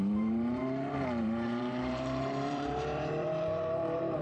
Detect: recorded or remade remade